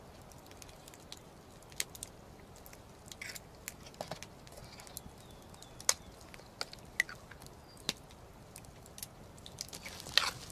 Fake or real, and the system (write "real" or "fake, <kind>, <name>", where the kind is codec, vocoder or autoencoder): real